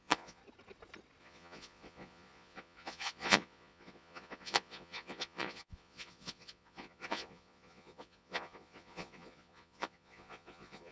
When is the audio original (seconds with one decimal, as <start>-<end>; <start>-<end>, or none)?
0.4-1.2